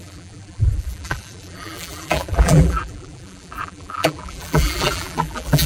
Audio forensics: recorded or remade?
remade